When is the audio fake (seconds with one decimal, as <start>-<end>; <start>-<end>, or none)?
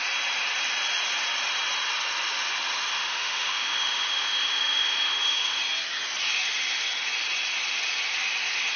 3.0-5.6